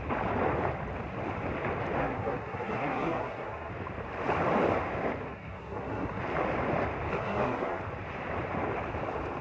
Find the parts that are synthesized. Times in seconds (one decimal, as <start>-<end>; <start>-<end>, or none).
2.0-3.7; 5.2-6.2; 7.2-7.8